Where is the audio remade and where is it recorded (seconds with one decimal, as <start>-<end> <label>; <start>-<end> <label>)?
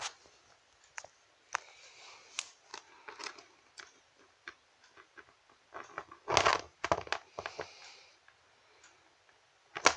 0.0-2.7 recorded; 2.7-4.7 remade; 4.7-10.0 recorded